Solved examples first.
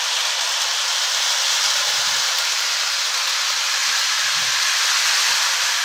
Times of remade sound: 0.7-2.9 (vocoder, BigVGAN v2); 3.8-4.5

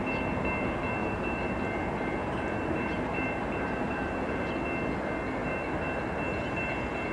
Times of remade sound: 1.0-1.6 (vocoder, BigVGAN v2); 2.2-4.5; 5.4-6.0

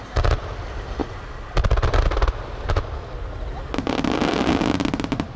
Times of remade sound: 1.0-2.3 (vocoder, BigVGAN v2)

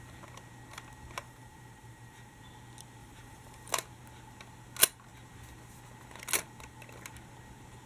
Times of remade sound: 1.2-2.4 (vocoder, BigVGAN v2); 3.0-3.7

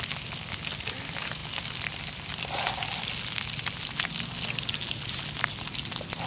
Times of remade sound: none

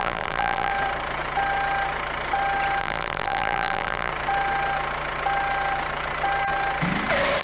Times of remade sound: 0.0-0.7 (vocoder, BigVGAN v2); 2.8-4.1

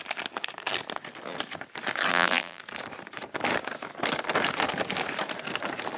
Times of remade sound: 2.1-2.6 (vocoder, BigVGAN v2)